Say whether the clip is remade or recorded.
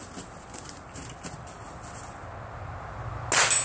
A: recorded